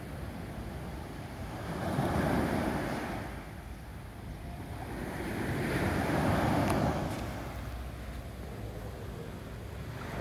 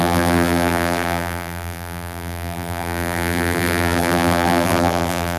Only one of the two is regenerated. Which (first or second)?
second